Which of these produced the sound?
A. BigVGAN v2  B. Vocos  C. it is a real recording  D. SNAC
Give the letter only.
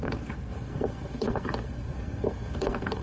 D